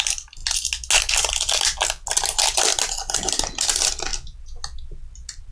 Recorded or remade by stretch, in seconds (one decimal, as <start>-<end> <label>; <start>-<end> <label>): 0.0-5.5 recorded